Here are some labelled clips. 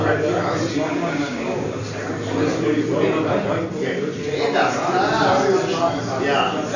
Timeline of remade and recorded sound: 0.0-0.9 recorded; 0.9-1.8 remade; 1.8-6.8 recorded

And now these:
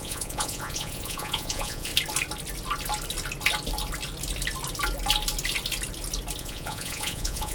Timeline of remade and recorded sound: 0.0-1.9 remade; 1.9-6.4 recorded; 6.4-7.5 remade